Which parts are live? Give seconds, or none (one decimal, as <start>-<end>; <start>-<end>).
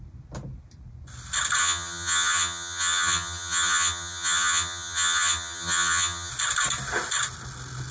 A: 0.0-1.6; 6.3-7.9